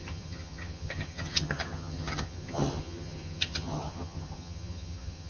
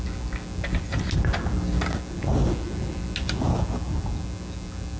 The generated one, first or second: first